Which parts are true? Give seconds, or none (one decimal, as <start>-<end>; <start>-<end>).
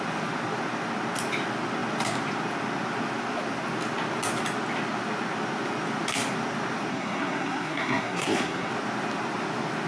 0.0-6.9; 8.7-9.9